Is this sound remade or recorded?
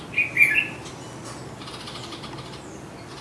recorded